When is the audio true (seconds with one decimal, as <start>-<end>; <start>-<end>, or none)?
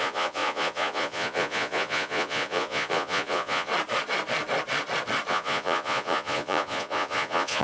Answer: 3.7-5.3